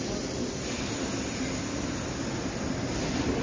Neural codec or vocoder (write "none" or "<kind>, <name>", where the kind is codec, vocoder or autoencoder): none